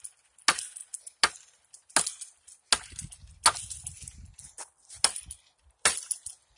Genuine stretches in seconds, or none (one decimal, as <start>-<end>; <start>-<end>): 0.0-6.6